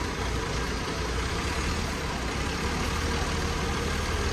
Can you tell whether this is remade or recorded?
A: recorded